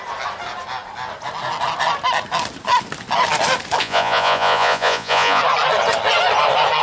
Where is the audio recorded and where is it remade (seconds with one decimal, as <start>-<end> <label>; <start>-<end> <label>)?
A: 0.0-3.8 recorded; 3.8-5.4 remade; 5.4-6.8 recorded